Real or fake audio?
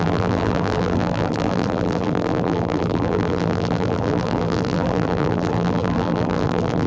fake